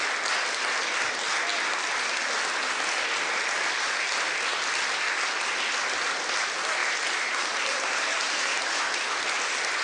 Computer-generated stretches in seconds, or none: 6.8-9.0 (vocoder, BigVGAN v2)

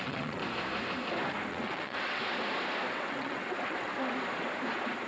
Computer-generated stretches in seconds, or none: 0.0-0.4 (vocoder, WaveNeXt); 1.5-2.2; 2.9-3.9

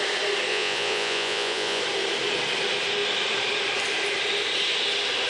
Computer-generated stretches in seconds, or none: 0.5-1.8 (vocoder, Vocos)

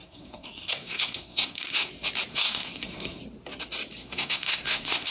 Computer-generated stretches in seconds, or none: 0.0-1.9 (codec, SNAC); 2.3-3.2; 4.0-5.1

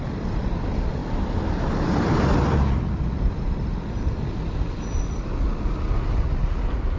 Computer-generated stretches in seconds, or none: none

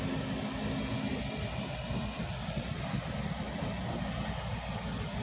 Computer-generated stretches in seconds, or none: 1.1-3.8 (vocoder, BigVGAN v2)

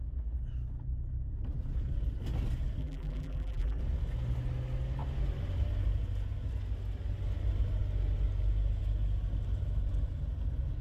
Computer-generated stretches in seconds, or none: 2.8-3.8 (vocoder, BigVGAN v2)

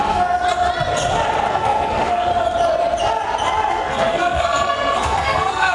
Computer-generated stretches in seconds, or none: 0.0-0.4 (codec, SNAC); 1.5-2.3; 3.7-5.7